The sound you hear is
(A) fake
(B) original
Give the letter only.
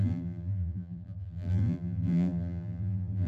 A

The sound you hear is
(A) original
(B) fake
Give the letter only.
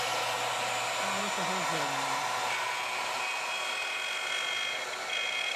A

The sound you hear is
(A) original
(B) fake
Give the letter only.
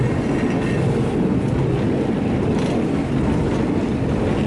B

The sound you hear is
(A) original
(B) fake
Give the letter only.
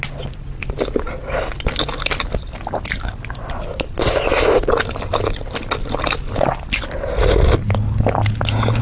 A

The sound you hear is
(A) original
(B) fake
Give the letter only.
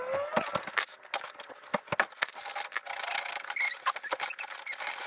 A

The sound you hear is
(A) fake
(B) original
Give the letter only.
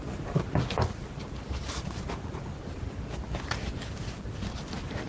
B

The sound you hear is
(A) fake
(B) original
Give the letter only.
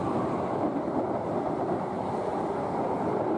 B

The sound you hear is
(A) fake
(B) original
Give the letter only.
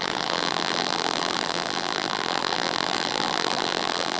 A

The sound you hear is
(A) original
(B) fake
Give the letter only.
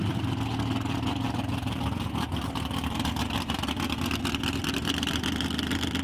A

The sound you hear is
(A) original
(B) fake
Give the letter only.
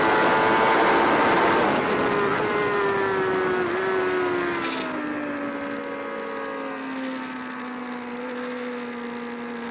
A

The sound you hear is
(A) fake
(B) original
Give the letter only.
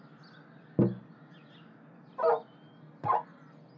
B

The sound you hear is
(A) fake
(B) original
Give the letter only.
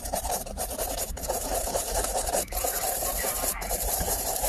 A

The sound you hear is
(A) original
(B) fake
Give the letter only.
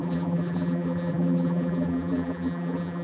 B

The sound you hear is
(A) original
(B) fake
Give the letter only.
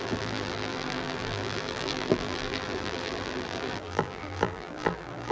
B